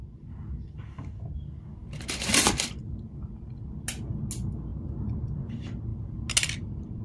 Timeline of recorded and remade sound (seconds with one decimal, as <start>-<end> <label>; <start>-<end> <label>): 0.0-7.0 recorded